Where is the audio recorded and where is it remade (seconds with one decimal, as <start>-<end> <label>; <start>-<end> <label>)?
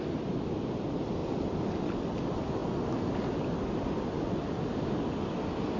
0.0-5.8 recorded